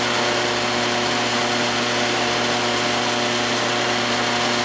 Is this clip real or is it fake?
real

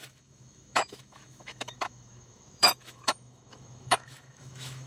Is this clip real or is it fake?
fake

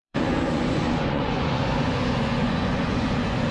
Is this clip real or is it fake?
fake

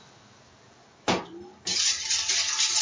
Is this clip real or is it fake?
real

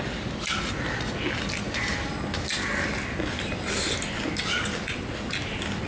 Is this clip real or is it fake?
real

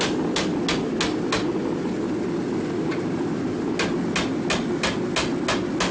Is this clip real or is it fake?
real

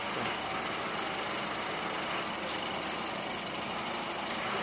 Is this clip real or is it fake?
real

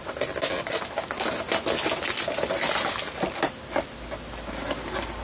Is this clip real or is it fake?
real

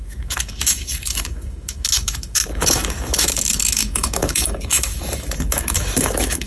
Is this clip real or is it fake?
fake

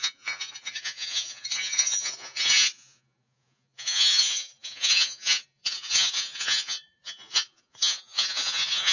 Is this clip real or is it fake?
fake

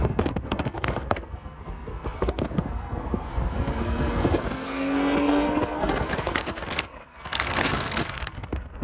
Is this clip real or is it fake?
fake